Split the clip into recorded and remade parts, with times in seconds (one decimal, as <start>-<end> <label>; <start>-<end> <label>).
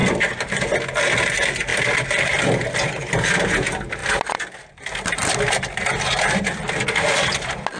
0.0-7.8 recorded